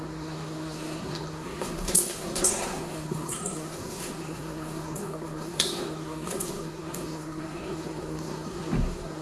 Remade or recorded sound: remade